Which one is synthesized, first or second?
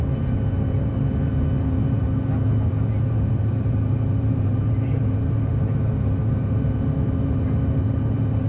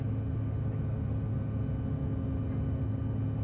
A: first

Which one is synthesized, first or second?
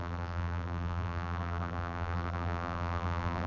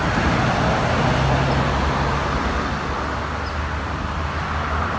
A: first